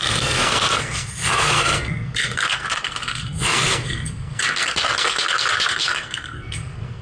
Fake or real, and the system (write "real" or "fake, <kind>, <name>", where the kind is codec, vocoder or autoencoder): fake, codec, SNAC